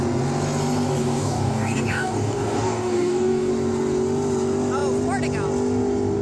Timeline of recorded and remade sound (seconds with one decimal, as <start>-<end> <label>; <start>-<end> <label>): 0.0-1.0 recorded; 1.0-3.5 remade; 3.5-6.2 recorded